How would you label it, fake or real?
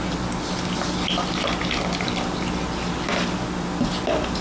real